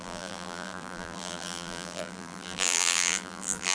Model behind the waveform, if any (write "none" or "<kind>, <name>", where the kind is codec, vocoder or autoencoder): vocoder, BigVGAN v2